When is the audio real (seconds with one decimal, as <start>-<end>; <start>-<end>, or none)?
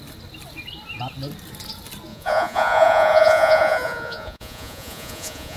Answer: 0.0-2.1